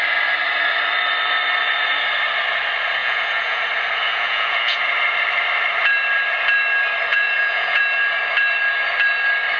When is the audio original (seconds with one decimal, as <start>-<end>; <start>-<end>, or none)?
0.0-3.0; 3.6-4.1; 4.8-7.1; 7.8-9.6